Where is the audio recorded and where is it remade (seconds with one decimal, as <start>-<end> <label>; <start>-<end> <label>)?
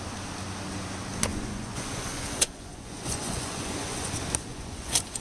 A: 0.0-1.3 recorded; 1.3-4.1 remade; 4.1-4.5 recorded; 4.5-5.2 remade